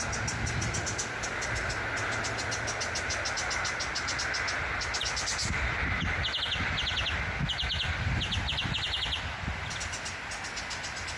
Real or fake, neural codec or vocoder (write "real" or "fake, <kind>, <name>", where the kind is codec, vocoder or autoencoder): real